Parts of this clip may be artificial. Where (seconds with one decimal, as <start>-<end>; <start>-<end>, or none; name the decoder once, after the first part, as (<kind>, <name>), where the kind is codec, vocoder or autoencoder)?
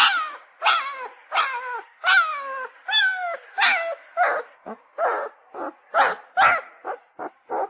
none